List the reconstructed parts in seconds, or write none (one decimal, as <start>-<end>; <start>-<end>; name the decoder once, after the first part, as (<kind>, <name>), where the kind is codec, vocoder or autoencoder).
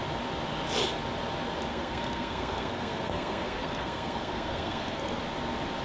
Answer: 1.7-5.2 (codec, SNAC)